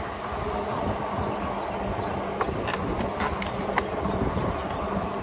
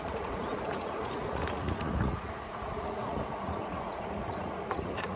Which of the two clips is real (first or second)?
first